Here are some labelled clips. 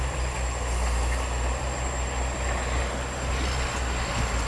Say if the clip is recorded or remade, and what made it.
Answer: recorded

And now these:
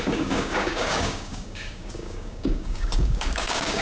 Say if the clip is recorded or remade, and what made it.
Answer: remade, codec, DAC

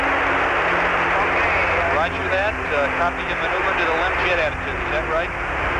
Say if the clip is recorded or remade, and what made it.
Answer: recorded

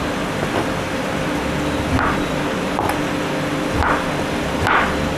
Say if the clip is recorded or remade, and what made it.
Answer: recorded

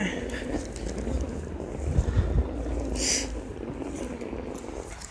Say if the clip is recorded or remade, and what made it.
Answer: recorded